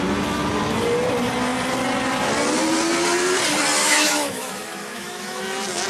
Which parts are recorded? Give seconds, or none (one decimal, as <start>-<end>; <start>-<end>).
0.0-3.8; 5.4-5.9